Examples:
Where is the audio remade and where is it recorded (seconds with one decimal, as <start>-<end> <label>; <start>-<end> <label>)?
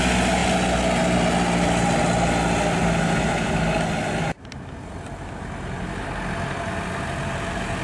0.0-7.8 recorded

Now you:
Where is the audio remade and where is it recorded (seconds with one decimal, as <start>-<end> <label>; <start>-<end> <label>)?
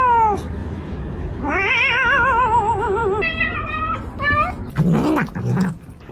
0.0-3.0 remade; 3.0-6.1 recorded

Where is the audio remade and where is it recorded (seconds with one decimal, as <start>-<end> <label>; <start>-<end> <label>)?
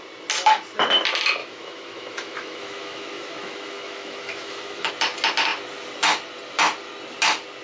0.0-1.4 recorded; 1.4-4.9 remade; 4.9-7.6 recorded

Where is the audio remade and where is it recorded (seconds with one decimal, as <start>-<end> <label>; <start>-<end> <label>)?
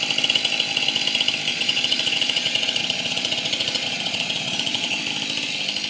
0.0-1.5 recorded; 1.5-5.0 remade; 5.0-5.9 recorded